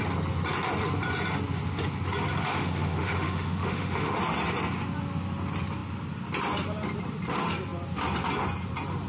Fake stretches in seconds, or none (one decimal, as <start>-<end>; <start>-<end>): 2.5-4.2